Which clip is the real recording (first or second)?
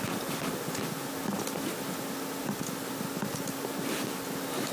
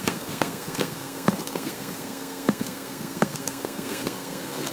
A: first